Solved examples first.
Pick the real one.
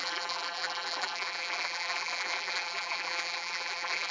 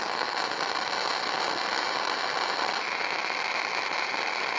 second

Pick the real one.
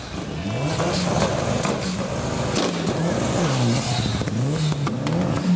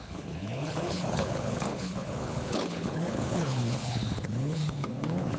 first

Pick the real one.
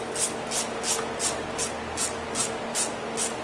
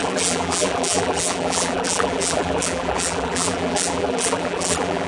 first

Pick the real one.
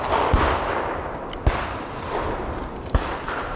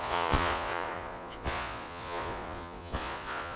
first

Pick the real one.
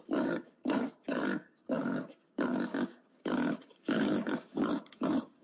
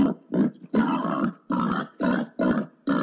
second